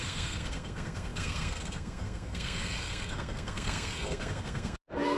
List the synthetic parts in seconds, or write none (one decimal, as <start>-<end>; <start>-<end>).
0.0-5.2